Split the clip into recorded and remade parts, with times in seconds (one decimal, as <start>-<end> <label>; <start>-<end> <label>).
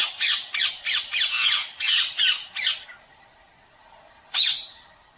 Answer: 0.0-3.8 recorded; 3.8-4.4 remade; 4.4-5.2 recorded